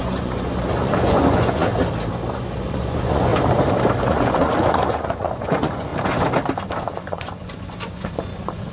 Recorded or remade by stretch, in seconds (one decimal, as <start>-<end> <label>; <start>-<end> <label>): 0.0-1.7 remade; 1.7-2.3 recorded; 2.3-3.3 remade; 3.3-4.0 recorded; 4.0-5.9 remade; 5.9-6.8 recorded; 6.8-8.7 remade